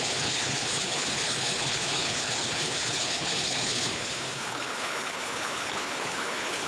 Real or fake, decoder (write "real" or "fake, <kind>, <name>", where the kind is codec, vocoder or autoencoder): fake, codec, HILCodec